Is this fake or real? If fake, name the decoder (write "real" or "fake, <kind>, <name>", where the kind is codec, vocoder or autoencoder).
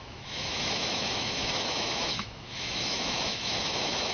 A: fake, autoencoder, DAC-VAE